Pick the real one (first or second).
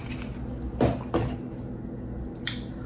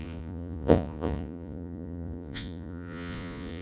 first